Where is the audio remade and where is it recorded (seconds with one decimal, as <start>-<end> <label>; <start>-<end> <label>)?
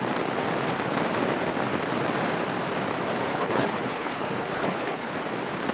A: 0.0-3.3 recorded; 3.3-5.1 remade; 5.1-5.7 recorded